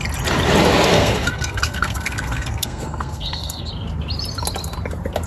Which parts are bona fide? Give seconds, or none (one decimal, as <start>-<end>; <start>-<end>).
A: 0.0-0.9; 3.7-5.3